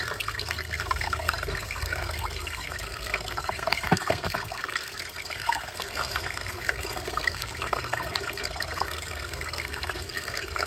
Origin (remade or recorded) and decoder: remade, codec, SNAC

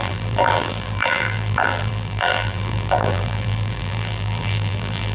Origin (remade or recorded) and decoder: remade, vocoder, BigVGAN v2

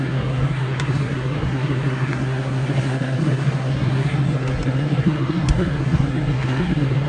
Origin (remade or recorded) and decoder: remade, codec, SNAC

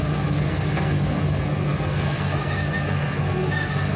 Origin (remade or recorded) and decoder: remade, codec, SNAC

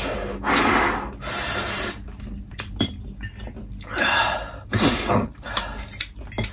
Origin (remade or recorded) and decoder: recorded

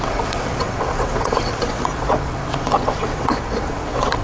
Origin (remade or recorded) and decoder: remade, vocoder, WaveNeXt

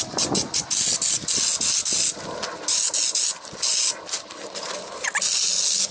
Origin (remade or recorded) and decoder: recorded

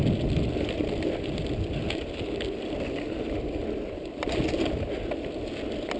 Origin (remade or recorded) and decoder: recorded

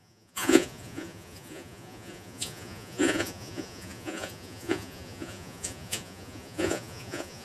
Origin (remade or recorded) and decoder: remade, vocoder, Vocos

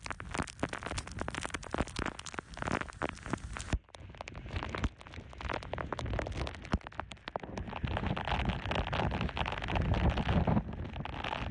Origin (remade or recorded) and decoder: recorded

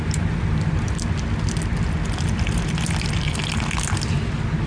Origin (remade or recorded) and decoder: recorded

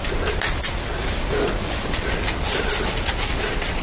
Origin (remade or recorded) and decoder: recorded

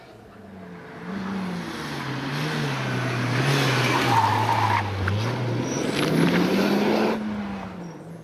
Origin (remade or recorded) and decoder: recorded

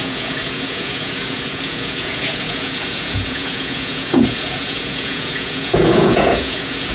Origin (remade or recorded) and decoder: remade, vocoder, Vocos